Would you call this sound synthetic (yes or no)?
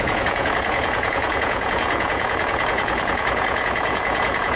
yes